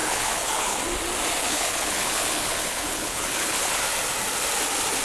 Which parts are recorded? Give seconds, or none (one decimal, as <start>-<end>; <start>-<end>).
0.8-1.4; 3.8-5.0